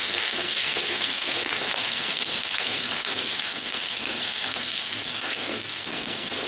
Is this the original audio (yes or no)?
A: no